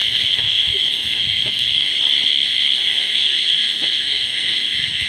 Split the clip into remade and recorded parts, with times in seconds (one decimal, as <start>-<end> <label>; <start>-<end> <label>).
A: 0.0-1.9 remade; 1.9-2.3 recorded; 2.3-5.1 remade

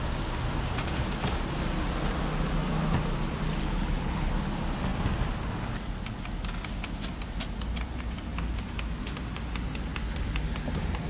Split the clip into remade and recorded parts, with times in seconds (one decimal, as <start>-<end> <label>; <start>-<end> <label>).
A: 0.0-3.6 recorded; 3.6-4.3 remade; 4.3-11.1 recorded